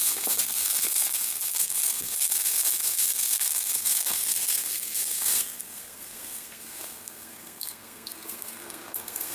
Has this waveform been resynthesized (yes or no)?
yes